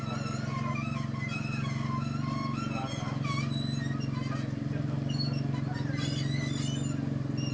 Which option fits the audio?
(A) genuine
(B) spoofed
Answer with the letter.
A